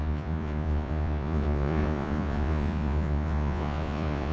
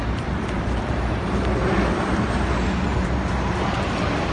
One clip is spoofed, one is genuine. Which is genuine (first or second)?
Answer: second